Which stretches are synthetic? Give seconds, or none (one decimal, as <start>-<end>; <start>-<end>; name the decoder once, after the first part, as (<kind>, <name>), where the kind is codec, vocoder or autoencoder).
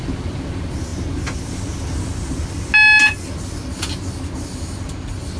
none